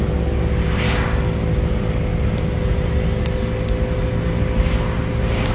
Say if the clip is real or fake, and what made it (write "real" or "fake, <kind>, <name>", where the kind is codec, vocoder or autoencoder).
real